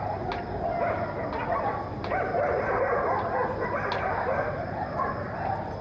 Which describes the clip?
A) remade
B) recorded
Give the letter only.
B